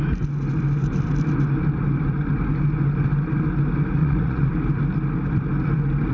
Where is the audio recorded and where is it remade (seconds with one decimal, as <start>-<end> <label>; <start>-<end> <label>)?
0.0-4.0 recorded; 4.0-4.5 remade; 4.5-6.1 recorded